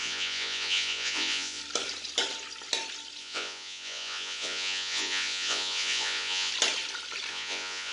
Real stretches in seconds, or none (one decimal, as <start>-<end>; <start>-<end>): 1.6-3.2; 6.5-7.3